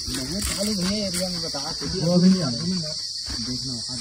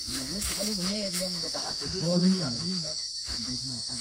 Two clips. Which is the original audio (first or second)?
first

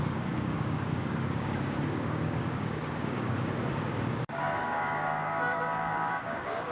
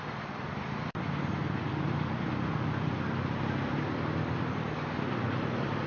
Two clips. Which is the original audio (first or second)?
second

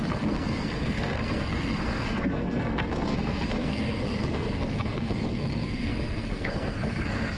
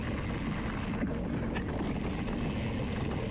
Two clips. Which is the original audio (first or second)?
second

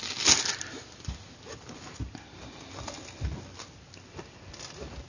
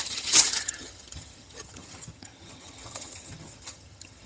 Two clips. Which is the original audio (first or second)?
first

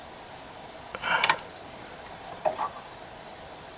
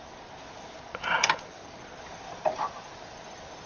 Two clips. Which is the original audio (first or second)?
second